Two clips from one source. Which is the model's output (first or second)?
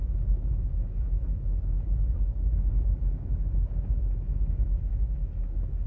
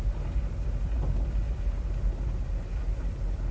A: first